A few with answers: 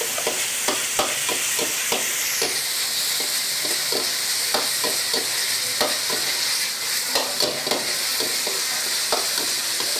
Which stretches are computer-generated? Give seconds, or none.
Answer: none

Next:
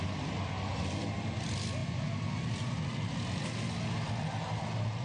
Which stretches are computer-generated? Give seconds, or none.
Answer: none